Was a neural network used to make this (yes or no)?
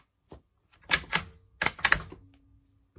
no